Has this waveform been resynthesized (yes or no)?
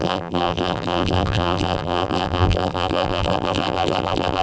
yes